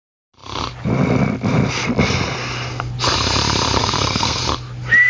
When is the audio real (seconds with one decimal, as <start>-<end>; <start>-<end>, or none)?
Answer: 0.0-3.8; 4.4-5.1